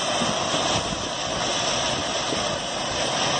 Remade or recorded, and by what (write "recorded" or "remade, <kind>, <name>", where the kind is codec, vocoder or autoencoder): recorded